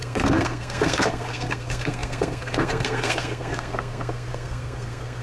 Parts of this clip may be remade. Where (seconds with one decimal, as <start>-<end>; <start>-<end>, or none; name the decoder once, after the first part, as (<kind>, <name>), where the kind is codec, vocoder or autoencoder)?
0.0-5.2 (codec, SNAC)